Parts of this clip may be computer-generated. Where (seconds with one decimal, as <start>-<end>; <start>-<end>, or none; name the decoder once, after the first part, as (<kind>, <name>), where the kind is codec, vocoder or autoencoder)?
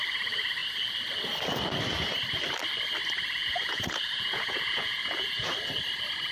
3.4-5.5 (vocoder, Vocos)